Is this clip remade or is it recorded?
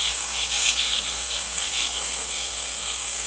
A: remade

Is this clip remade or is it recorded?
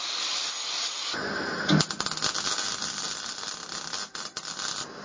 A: recorded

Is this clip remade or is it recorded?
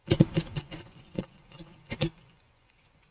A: remade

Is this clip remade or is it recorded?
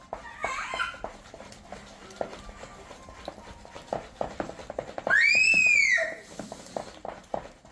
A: recorded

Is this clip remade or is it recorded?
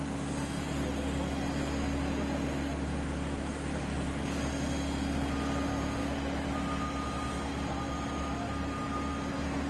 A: recorded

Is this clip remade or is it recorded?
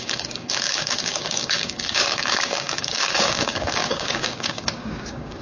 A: remade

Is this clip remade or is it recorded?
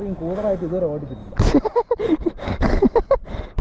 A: recorded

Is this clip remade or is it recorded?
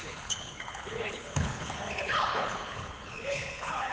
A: remade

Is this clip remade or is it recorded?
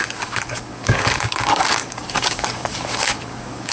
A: remade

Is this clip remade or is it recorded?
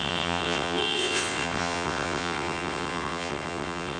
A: remade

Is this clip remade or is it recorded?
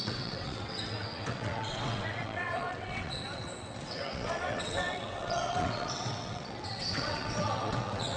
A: remade